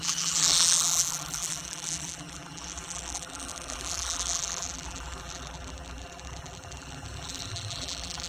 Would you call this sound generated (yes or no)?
yes